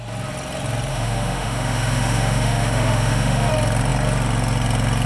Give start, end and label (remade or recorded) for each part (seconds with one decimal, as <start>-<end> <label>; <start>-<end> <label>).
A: 0.0-0.9 recorded; 0.9-3.5 remade; 3.5-5.1 recorded